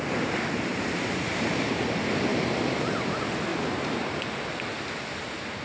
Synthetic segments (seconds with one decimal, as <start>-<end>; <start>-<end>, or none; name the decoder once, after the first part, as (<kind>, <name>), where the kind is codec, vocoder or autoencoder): 0.7-1.8 (vocoder, BigVGAN v2); 2.3-2.8; 3.5-4.2